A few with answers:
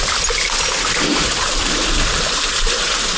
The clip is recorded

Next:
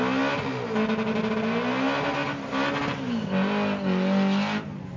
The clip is recorded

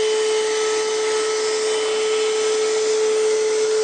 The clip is recorded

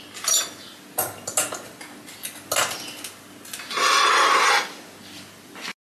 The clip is recorded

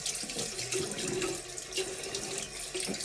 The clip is recorded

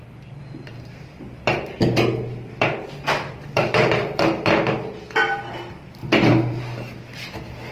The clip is remade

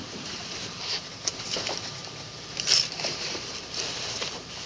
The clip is remade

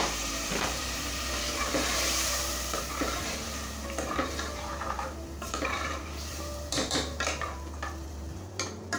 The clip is remade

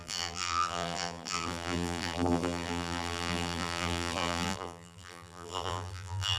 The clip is remade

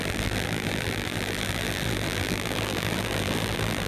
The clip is remade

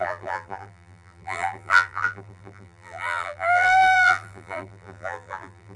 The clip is remade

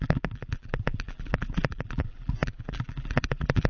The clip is remade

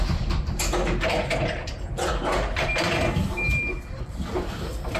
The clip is recorded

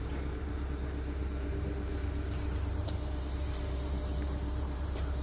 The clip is remade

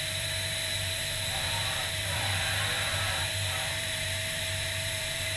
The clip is remade